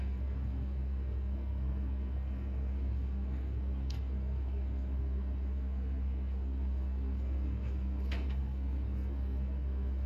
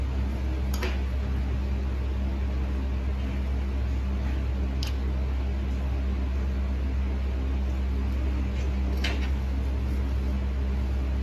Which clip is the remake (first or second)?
first